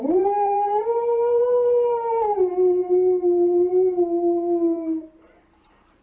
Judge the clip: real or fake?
fake